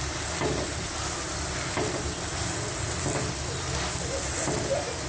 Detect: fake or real real